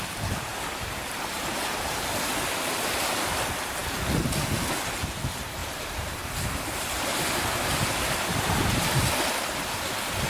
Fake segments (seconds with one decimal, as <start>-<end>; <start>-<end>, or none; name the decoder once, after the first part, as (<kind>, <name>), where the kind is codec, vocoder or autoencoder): 0.0-2.3 (vocoder, BigVGAN v2); 5.6-9.2